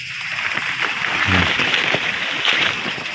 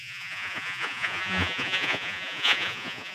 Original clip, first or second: first